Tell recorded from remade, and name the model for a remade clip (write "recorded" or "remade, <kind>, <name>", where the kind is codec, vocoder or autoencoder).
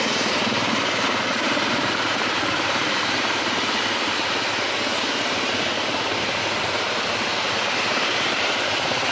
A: remade, vocoder, BigVGAN v2